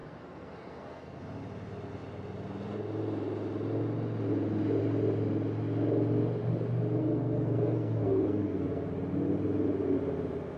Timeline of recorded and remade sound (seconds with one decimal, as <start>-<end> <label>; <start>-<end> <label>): 0.0-1.2 remade; 1.2-7.0 recorded; 7.0-8.9 remade; 8.9-10.6 recorded